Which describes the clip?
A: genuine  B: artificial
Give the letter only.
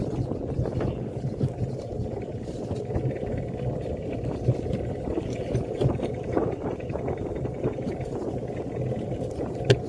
A